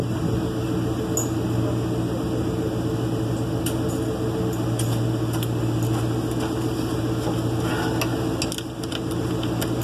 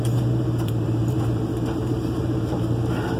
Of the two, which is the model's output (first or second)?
second